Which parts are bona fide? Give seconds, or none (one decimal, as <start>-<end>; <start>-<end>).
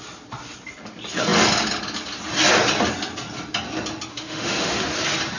0.0-4.1; 4.8-5.4